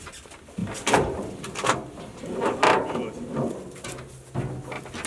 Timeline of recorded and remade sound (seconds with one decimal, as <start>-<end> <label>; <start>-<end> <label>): 0.0-0.6 recorded; 0.6-3.5 remade; 3.5-5.1 recorded